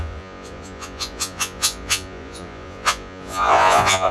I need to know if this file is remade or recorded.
remade